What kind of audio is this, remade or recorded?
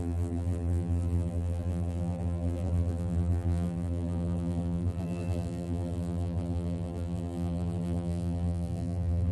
remade